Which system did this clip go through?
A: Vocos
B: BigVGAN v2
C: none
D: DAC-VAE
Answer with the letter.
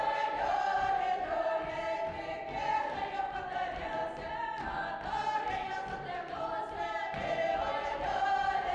C